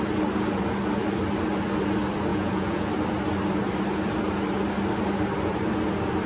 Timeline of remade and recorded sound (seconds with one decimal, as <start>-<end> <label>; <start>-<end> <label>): 0.0-2.3 recorded; 2.3-2.9 remade; 2.9-6.3 recorded